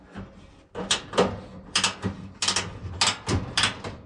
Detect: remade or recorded recorded